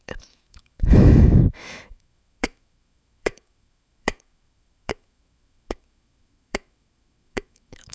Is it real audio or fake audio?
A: fake